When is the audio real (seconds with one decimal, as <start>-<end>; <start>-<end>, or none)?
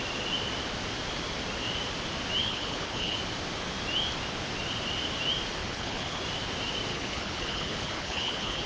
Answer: 0.0-2.4; 3.2-5.6; 6.2-6.9